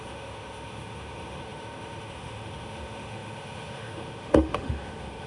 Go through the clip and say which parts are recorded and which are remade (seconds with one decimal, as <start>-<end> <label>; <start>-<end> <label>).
0.0-5.3 remade